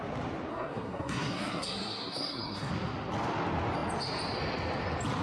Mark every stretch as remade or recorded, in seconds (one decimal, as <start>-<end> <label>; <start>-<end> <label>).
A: 0.0-0.5 recorded; 0.5-2.7 remade; 2.7-5.2 recorded